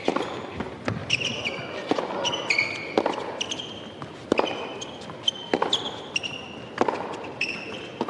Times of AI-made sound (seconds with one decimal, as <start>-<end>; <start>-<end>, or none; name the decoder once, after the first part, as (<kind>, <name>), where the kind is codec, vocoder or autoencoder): 1.0-1.5 (vocoder, BigVGAN v2)